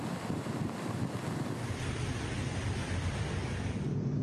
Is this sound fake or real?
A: real